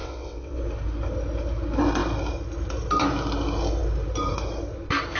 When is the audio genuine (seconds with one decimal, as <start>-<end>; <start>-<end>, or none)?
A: 0.6-5.2